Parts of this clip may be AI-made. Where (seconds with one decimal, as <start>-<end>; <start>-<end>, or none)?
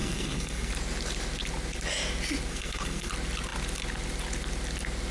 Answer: 0.0-0.7; 2.5-3.1